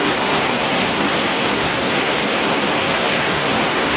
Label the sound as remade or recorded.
remade